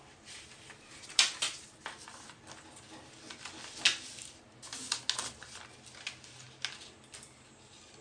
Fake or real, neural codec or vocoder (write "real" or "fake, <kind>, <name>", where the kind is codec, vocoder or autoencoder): real